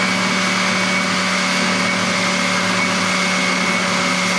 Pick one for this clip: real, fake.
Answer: real